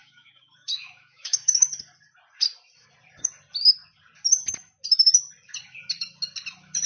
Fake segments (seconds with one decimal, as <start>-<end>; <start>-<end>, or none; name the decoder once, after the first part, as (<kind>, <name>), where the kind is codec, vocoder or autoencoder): 0.0-1.7 (autoencoder, DAC-VAE)

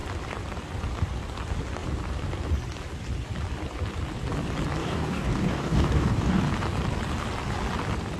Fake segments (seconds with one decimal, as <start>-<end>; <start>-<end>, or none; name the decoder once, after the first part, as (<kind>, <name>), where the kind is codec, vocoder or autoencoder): 4.8-6.4 (codec, DAC)

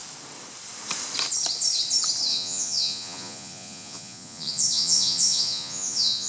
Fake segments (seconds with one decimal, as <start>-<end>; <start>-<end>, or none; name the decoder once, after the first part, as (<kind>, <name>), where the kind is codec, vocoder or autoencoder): 2.3-6.3 (vocoder, Vocos)